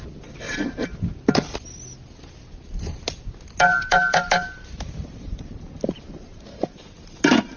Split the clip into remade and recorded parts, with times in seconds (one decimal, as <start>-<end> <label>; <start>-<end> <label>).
0.0-3.7 recorded; 3.7-5.8 remade; 5.8-6.3 recorded; 6.3-6.8 remade; 6.8-7.6 recorded